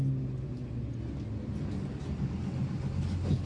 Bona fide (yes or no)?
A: yes